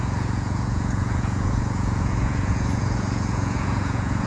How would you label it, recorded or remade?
remade